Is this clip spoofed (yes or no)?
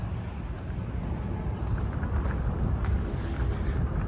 no